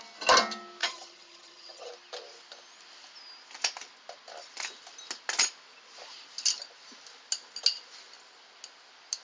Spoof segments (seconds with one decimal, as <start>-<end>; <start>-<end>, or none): 0.8-1.9